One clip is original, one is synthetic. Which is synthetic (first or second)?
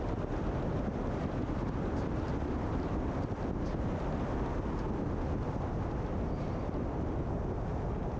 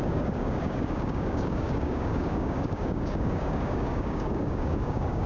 second